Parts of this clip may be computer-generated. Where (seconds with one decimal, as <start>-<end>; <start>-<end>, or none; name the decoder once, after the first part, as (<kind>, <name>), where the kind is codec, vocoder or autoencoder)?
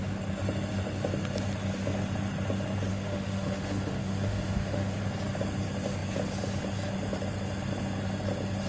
2.9-5.0 (autoencoder, DAC-VAE)